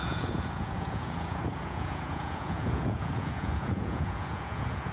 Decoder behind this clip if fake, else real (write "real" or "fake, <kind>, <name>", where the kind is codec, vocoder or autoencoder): fake, vocoder, Vocos